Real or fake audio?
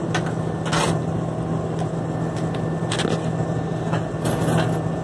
real